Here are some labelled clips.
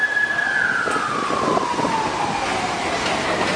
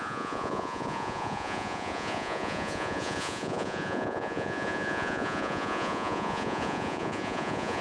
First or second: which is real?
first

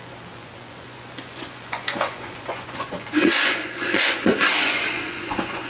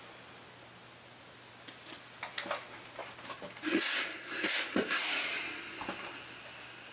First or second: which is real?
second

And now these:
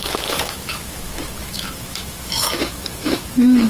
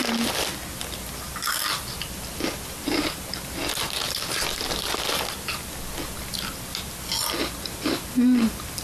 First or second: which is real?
second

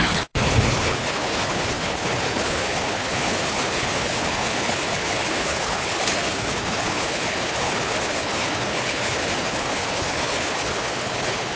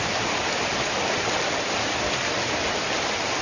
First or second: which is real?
second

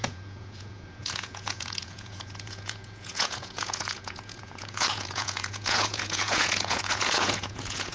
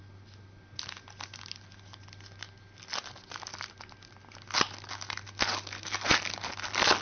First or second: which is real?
second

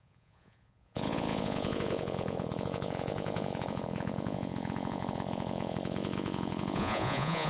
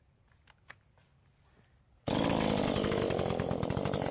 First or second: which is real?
second